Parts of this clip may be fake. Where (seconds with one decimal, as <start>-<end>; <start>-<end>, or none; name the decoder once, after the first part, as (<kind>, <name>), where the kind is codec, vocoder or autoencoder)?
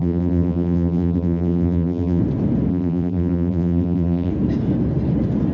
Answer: 0.0-2.2 (vocoder, BigVGAN v2); 2.7-4.3